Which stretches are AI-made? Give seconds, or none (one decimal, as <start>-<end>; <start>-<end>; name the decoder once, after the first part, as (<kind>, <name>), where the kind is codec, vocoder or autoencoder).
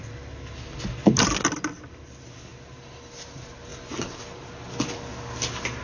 none